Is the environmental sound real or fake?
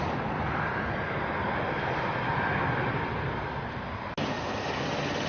real